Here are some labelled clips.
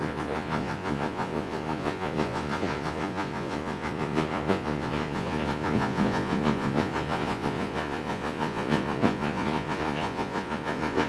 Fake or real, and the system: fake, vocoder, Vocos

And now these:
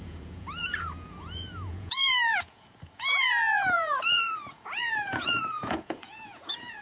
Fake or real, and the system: fake, vocoder, Vocos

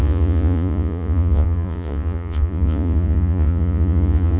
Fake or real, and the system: fake, vocoder, Vocos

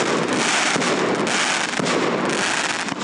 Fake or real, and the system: real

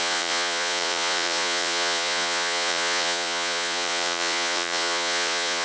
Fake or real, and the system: fake, vocoder, Vocos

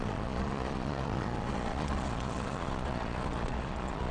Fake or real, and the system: fake, vocoder, Vocos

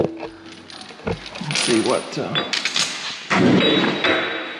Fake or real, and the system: real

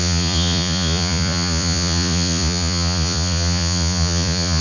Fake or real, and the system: fake, vocoder, Vocos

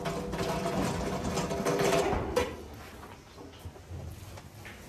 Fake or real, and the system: real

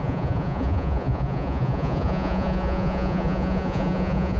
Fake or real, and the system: fake, vocoder, Vocos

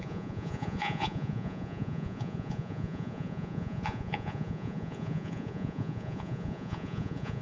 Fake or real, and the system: fake, vocoder, Vocos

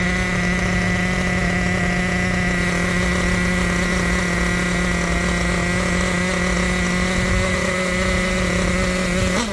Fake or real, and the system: real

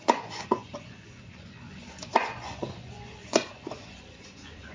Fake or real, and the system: fake, vocoder, Vocos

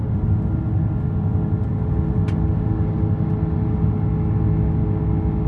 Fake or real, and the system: real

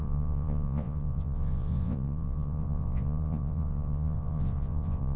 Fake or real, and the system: fake, vocoder, Vocos